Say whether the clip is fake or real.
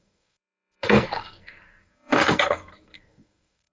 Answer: fake